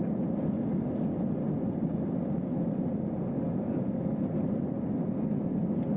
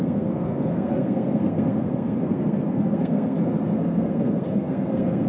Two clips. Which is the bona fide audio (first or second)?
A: first